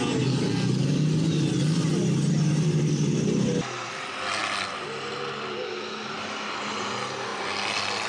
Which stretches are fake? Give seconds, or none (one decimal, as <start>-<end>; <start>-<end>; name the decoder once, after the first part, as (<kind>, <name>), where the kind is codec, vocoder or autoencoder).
none

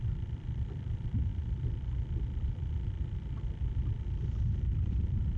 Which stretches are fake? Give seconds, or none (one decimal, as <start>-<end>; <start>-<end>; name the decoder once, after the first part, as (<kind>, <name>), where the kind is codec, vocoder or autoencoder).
0.0-1.3 (vocoder, BigVGAN v2); 4.5-5.4